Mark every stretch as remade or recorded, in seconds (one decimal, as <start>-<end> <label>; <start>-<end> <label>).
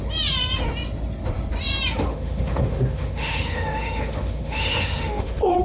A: 0.0-2.1 recorded; 2.1-5.6 remade